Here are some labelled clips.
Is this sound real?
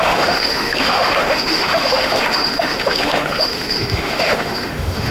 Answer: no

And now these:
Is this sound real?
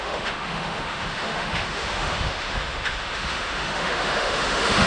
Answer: no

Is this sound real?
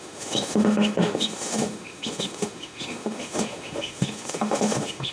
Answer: no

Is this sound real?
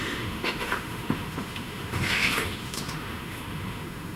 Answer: no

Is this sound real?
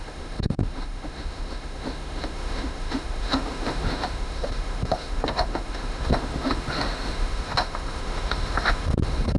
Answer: no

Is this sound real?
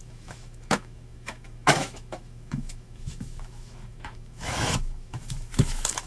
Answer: no